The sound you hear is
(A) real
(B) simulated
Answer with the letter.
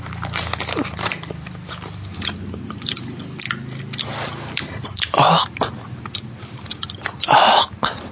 A